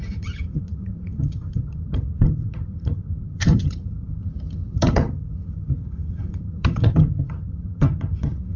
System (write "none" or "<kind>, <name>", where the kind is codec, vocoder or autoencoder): vocoder, HiFi-GAN